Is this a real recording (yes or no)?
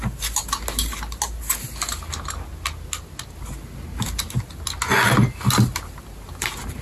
yes